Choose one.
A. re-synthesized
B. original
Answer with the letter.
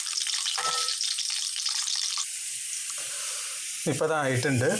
A